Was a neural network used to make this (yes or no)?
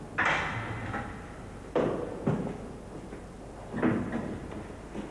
no